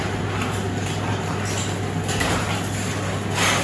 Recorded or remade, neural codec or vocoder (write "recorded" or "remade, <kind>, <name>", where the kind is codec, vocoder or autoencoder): recorded